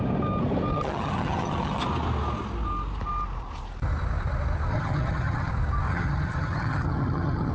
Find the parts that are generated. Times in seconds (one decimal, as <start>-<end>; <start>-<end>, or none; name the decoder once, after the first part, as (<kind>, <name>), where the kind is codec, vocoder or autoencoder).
0.7-1.8 (vocoder, HiFi-GAN); 4.7-5.5; 5.9-7.5